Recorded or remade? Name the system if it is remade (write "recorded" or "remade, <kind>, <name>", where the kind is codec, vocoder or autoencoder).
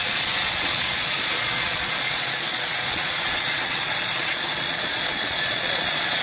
remade, vocoder, Vocos